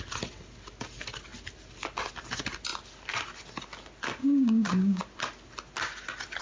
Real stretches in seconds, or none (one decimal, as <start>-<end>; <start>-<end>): 0.0-4.2; 5.0-6.4